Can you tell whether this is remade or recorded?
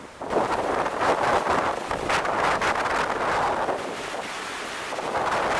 recorded